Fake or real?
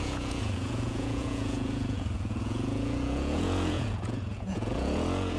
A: fake